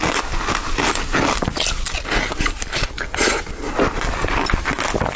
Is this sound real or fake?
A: real